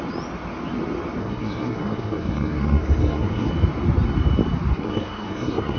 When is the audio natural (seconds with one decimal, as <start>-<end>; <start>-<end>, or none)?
0.0-1.2; 3.5-4.7

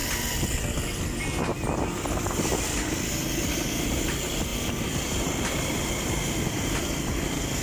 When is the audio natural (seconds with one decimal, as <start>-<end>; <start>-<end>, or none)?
0.0-4.5; 5.7-7.6